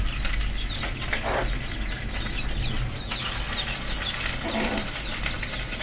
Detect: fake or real real